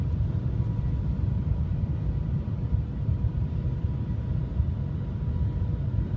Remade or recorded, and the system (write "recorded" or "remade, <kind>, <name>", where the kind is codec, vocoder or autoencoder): recorded